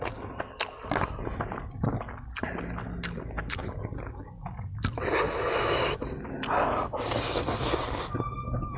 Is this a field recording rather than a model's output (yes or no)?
yes